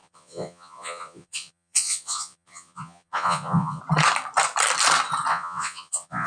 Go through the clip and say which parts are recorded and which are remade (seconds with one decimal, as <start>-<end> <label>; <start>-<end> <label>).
0.0-3.8 remade; 3.8-5.3 recorded; 5.3-6.3 remade